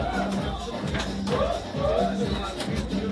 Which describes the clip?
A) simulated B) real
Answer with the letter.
B